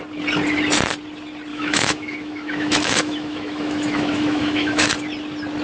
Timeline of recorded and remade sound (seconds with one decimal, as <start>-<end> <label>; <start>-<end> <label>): 0.0-1.5 recorded; 1.5-4.9 remade; 4.9-5.6 recorded